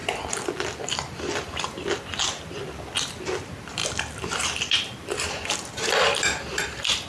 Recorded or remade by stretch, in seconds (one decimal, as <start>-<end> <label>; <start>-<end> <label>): 0.0-1.6 remade; 1.6-3.8 recorded; 3.8-7.1 remade